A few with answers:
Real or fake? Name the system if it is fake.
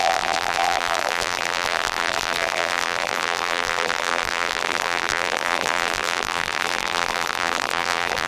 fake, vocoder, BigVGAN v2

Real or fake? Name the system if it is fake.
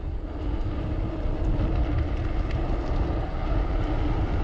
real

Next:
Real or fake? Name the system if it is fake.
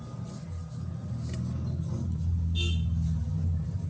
real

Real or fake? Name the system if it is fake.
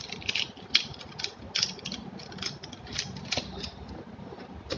real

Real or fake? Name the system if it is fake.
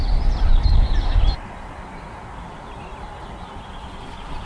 real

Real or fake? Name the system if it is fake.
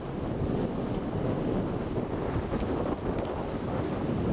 real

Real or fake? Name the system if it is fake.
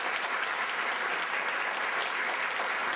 real